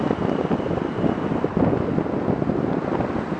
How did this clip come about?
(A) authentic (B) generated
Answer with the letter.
A